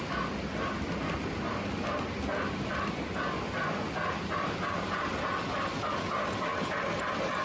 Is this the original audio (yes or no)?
yes